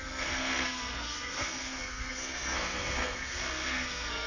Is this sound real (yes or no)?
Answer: no